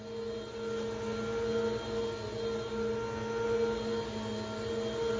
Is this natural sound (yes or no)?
yes